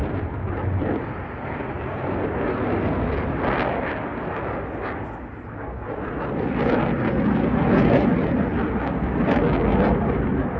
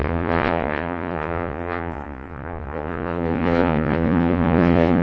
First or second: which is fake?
second